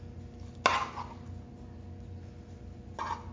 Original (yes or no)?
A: yes